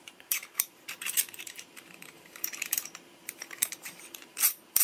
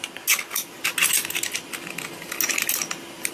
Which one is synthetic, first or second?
first